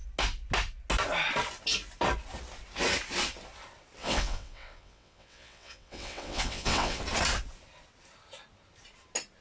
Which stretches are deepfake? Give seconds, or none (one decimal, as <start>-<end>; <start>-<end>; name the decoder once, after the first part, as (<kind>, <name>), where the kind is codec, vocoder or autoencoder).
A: 4.0-7.0 (vocoder, WaveNeXt)